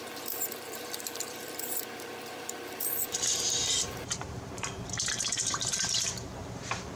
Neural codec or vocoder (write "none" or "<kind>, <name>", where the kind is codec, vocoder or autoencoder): vocoder, BigVGAN v2